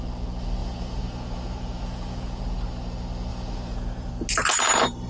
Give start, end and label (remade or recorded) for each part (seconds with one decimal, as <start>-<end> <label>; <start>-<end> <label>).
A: 0.0-0.6 recorded; 0.6-2.4 remade; 2.4-3.3 recorded; 3.3-4.1 remade; 4.1-5.1 recorded